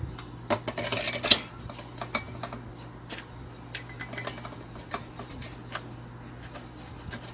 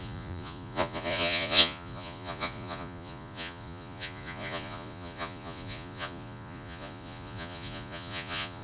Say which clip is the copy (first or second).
second